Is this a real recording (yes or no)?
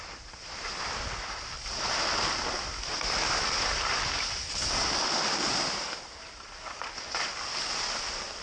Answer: yes